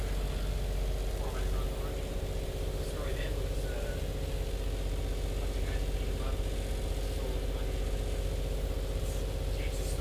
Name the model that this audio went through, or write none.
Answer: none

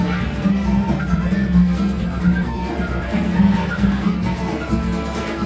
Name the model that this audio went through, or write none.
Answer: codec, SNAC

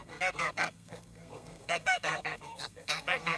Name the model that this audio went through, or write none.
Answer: codec, SNAC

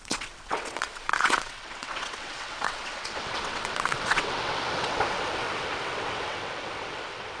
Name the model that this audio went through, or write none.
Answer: vocoder, WaveNeXt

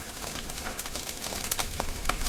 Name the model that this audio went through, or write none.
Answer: autoencoder, DAC-VAE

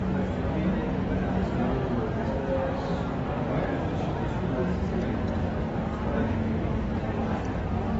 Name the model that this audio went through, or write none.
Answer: none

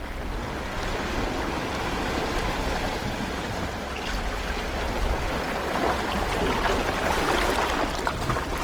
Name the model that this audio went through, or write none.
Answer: none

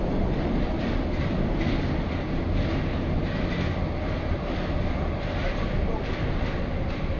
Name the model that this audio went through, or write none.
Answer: none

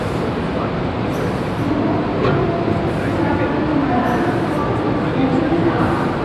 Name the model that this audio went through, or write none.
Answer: none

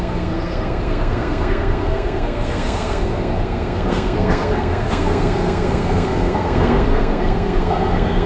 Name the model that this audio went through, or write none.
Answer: codec, SNAC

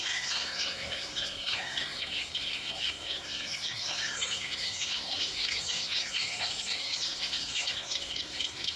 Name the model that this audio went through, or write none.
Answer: codec, SNAC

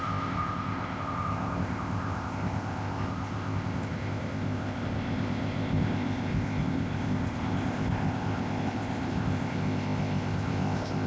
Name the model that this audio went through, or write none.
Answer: codec, ZipCodec